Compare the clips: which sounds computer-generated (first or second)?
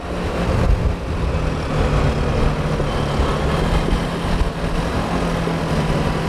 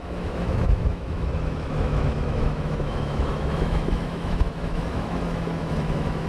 second